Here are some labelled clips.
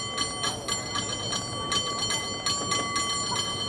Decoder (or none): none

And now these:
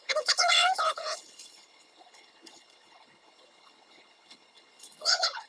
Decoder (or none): codec, HILCodec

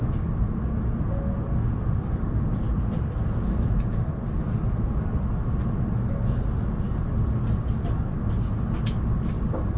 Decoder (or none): none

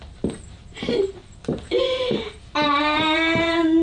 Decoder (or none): vocoder, BigVGAN v2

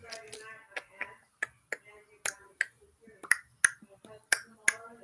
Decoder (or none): none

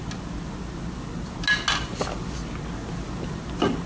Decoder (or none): none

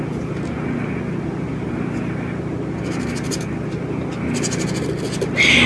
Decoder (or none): none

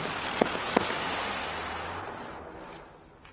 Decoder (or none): none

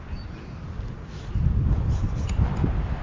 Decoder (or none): none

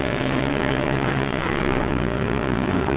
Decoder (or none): vocoder, WaveNeXt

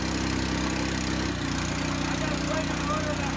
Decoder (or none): none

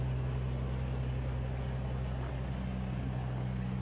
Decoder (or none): none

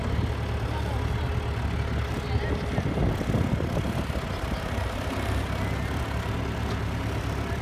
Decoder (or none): none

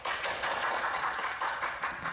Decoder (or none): vocoder, Vocos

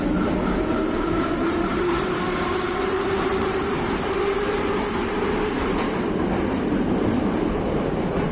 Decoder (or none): vocoder, BigVGAN v2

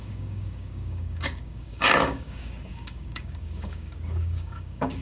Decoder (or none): codec, DAC